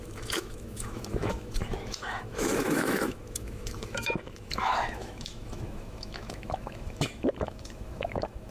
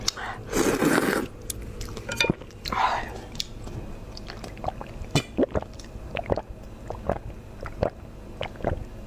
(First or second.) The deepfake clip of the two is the first